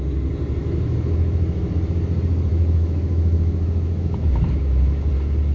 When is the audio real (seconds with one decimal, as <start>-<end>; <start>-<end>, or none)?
0.0-0.6; 1.7-2.5; 5.1-5.5